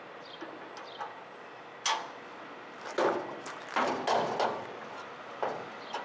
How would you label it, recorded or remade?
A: recorded